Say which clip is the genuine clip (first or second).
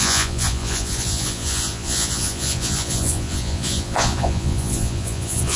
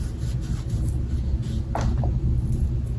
second